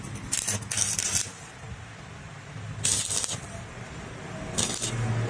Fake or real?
real